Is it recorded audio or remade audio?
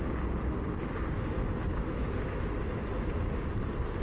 recorded